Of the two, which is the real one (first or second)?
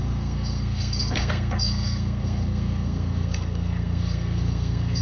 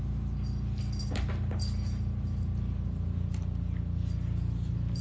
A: second